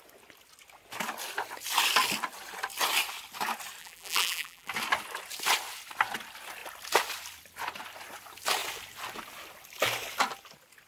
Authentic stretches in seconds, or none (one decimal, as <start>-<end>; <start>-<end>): 0.0-3.8; 4.7-10.9